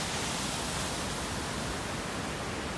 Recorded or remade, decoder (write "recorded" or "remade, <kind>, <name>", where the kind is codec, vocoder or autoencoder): recorded